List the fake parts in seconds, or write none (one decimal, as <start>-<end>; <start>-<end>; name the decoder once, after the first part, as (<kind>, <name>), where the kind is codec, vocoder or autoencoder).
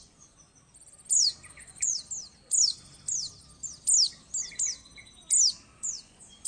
0.0-0.5 (vocoder, Vocos); 1.5-1.9; 5.8-6.5